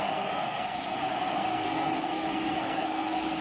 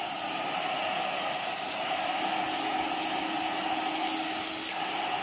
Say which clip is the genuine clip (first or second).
second